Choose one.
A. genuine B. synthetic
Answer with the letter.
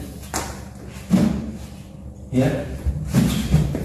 A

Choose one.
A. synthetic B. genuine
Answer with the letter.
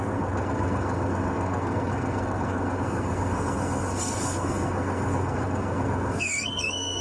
A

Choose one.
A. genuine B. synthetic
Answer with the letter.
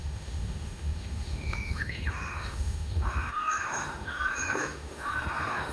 B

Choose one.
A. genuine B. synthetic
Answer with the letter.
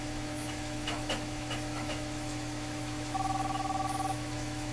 B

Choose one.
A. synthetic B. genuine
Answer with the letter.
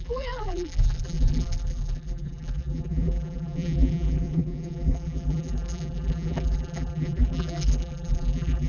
A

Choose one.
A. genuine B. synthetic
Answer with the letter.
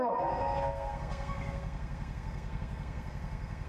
B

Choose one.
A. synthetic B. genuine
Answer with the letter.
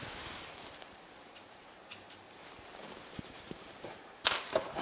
A